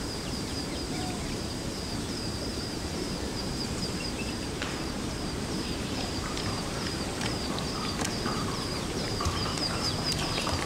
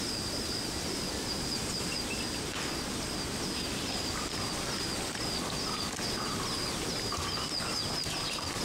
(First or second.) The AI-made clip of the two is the first